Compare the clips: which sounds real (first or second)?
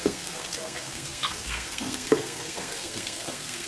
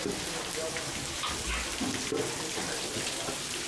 second